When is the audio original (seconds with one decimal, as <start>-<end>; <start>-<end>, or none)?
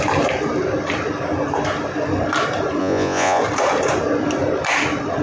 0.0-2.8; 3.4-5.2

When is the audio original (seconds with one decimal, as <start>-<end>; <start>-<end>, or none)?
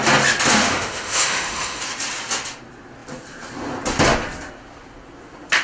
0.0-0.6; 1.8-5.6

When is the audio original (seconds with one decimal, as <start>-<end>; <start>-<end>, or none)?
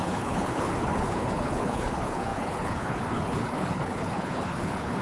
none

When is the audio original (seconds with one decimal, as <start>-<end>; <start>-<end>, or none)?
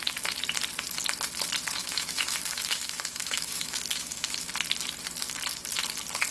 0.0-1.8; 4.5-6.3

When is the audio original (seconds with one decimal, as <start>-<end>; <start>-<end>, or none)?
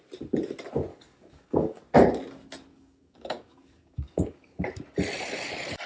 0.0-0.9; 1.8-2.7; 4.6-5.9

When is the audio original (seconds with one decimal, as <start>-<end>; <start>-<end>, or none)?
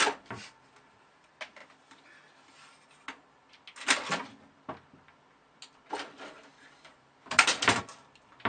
0.0-6.5; 7.8-8.5